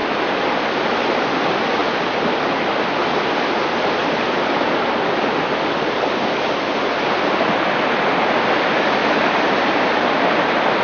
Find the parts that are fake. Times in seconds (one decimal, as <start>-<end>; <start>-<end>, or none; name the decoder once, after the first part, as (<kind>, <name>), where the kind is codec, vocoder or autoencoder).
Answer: 4.0-6.9 (vocoder, BigVGAN v2); 9.0-9.8